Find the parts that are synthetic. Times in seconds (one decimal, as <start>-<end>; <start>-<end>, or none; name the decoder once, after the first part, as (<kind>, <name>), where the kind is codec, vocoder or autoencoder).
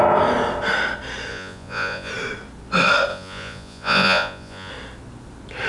1.3-2.1 (vocoder, Vocos); 3.1-4.7